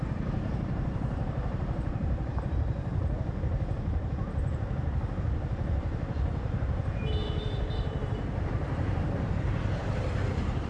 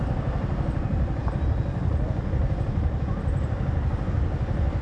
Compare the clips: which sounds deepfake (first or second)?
first